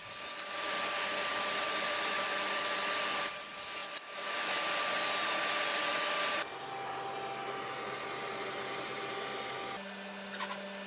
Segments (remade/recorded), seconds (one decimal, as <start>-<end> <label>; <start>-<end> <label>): 0.0-10.9 recorded